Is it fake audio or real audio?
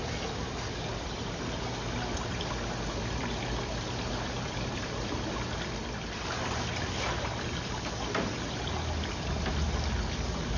real